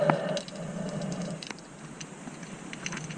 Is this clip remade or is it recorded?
recorded